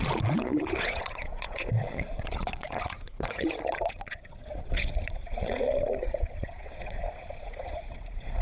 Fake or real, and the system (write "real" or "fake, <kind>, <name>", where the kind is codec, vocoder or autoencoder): fake, vocoder, Vocos